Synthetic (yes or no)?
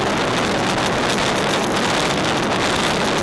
no